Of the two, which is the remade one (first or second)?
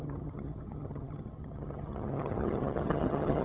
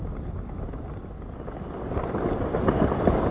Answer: first